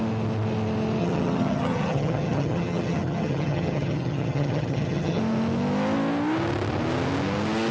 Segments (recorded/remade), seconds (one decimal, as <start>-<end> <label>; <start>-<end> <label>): 0.0-1.0 recorded; 1.0-5.2 remade; 5.2-7.7 recorded